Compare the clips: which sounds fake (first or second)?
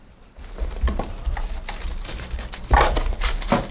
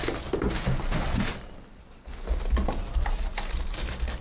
first